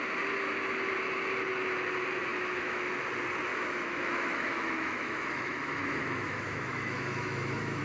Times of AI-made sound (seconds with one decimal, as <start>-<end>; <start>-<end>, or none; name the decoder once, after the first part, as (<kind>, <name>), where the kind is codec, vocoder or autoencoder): 2.3-2.9 (autoencoder, DAC-VAE); 3.5-7.8